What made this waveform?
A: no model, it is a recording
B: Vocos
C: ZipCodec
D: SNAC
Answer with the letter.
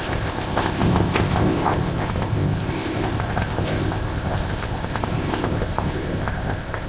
C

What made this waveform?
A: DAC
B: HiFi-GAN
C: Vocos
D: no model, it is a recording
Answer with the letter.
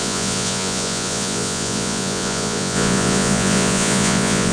C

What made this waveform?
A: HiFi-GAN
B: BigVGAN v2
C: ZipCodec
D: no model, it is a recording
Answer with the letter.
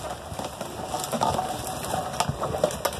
D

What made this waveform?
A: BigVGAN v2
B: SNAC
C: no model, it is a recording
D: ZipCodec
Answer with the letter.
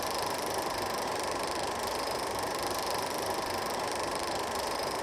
A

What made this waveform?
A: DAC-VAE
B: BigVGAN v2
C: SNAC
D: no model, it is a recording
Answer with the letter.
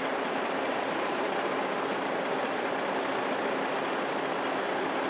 D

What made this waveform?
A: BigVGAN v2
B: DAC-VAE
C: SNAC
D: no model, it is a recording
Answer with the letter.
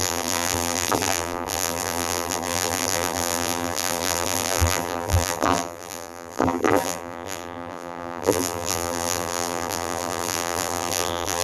A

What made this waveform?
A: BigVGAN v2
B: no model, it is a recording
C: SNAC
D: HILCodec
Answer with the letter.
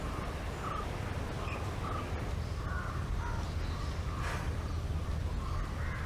B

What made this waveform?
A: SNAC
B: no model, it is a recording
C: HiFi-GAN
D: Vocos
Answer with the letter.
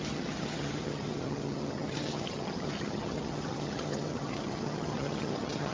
C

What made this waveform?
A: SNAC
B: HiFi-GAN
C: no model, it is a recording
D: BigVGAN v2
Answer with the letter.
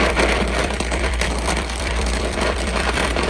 D